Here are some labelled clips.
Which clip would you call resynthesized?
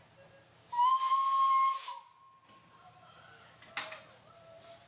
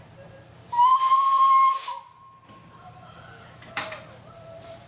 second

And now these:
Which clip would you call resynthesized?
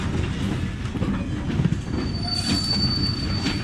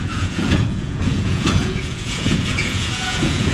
second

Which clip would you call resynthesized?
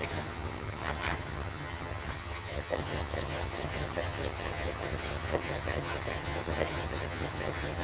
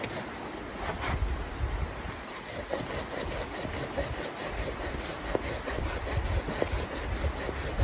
first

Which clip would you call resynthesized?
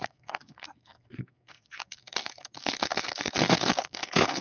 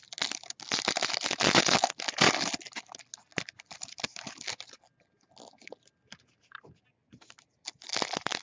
first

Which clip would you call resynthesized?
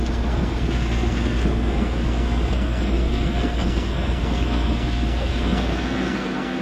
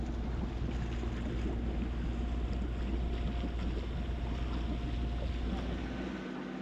first